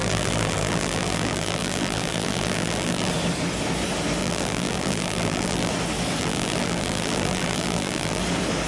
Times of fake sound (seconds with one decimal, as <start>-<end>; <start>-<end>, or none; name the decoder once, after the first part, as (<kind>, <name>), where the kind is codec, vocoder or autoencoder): 0.0-3.1 (vocoder, BigVGAN v2); 4.2-5.7; 6.2-8.2